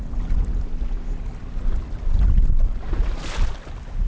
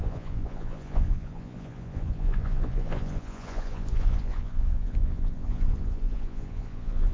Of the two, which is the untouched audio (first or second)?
first